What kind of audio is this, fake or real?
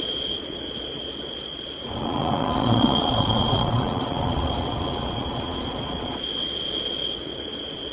fake